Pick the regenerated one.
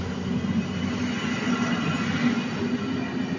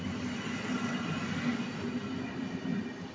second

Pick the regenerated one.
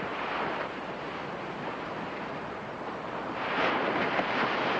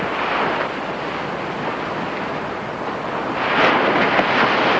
first